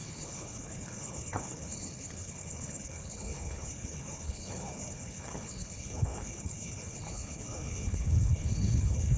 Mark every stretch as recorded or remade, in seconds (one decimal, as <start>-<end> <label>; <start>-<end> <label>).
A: 0.0-9.2 remade